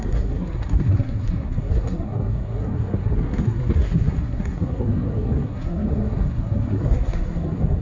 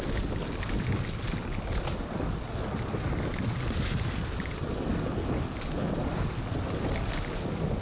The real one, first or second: second